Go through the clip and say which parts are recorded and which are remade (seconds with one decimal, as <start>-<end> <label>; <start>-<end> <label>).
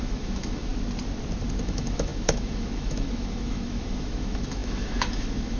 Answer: 0.0-0.7 remade; 0.7-1.6 recorded; 1.6-5.6 remade